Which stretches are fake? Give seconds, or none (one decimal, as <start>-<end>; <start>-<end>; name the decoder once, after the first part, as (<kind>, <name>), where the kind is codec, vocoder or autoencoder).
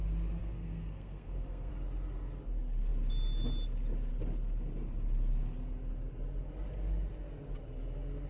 0.4-1.7 (codec, SNAC)